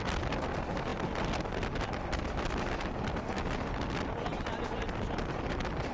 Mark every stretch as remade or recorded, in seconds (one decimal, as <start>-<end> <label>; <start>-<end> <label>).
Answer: 0.0-5.9 recorded